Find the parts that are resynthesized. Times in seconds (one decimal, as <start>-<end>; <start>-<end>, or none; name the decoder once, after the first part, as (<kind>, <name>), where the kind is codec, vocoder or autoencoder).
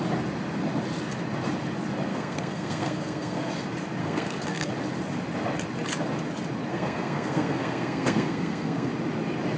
2.1-3.5 (codec, SNAC); 4.0-4.7; 6.7-8.9